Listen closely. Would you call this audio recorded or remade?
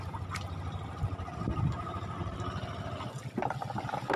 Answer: recorded